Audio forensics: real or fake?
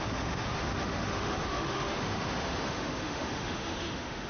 fake